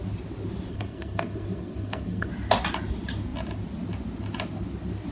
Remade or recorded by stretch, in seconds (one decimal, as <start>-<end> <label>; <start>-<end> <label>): 0.0-0.7 recorded; 0.7-2.3 remade; 2.3-5.1 recorded